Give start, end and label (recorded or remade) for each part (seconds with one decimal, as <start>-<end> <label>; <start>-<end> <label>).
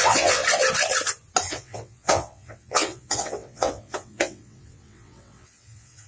0.0-0.4 remade; 0.4-1.5 recorded; 1.5-6.1 remade